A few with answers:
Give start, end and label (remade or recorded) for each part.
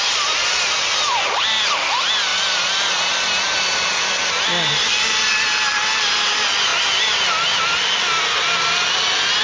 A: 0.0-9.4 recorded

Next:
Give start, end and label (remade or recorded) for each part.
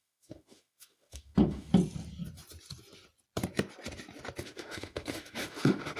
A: 0.0-1.7 remade; 1.7-4.4 recorded; 4.4-6.0 remade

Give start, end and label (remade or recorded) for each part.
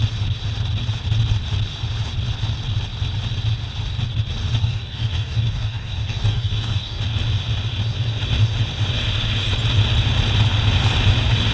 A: 0.0-4.6 recorded; 4.6-7.0 remade; 7.0-11.5 recorded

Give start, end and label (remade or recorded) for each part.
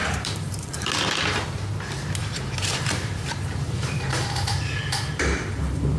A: 0.0-0.9 remade; 0.9-2.2 recorded; 2.2-6.0 remade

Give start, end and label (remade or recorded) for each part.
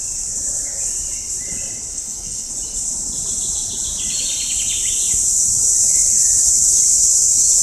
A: 0.0-1.9 recorded; 1.9-2.5 remade; 2.5-7.6 recorded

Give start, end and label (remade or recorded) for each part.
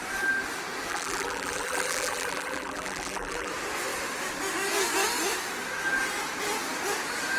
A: 0.0-0.9 recorded; 0.9-3.5 remade; 3.5-7.4 recorded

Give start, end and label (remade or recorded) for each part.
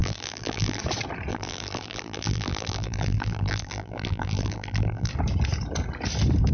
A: 0.0-0.8 remade; 0.8-1.3 recorded; 1.3-5.1 remade; 5.1-6.5 recorded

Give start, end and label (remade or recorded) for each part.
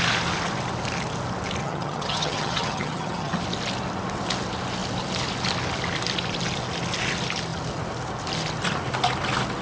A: 0.0-1.6 recorded; 1.6-3.4 remade; 3.4-9.6 recorded